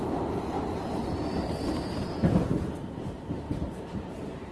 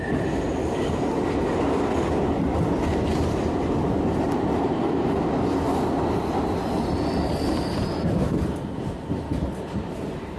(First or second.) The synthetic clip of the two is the first